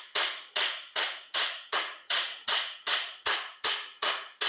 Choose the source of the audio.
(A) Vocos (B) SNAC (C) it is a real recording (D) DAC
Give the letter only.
A